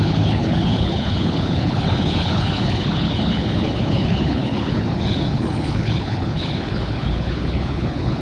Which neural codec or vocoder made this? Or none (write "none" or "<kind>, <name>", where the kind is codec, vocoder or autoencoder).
codec, HILCodec